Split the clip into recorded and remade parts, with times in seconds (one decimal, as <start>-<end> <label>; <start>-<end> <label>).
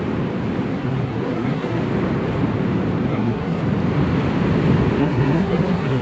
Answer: 0.0-0.7 recorded; 0.7-1.8 remade; 1.8-3.1 recorded; 3.1-3.6 remade; 3.6-5.0 recorded; 5.0-6.0 remade